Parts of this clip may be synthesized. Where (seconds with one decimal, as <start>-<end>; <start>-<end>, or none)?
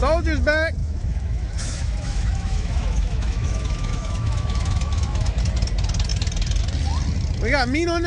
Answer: 0.8-5.4